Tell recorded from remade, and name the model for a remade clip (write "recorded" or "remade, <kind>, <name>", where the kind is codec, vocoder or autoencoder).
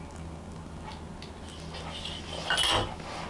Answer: recorded